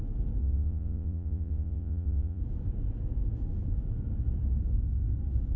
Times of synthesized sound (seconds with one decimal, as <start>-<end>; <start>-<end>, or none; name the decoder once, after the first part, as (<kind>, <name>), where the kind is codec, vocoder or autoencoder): 0.4-2.4 (vocoder, Vocos)